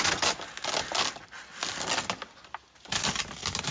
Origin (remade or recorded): recorded